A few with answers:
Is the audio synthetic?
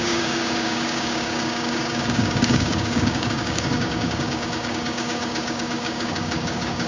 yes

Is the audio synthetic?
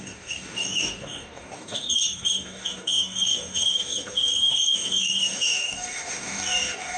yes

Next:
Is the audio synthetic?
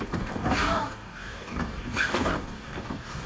yes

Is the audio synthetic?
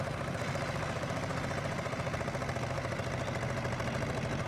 no